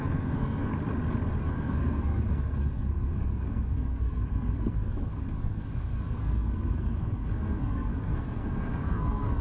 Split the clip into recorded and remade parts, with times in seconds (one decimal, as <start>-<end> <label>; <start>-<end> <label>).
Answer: 0.0-0.7 remade; 0.7-1.4 recorded; 1.4-9.4 remade